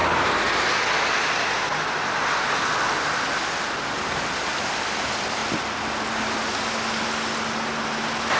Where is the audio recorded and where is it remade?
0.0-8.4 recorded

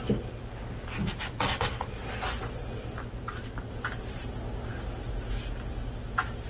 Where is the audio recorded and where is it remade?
0.0-6.5 recorded

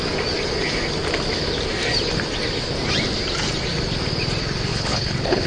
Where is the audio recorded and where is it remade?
0.0-4.7 recorded; 4.7-5.5 remade

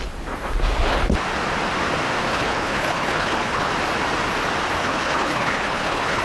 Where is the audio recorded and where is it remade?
0.0-2.3 recorded; 2.3-3.7 remade; 3.7-4.8 recorded; 4.8-6.2 remade

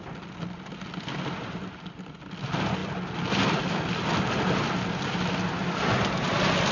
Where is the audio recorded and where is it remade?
0.0-6.7 recorded